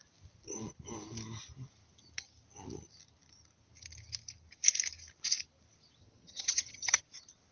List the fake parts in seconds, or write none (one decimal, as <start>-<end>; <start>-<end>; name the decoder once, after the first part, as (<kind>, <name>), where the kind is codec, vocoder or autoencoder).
6.0-7.0 (vocoder, HiFi-GAN)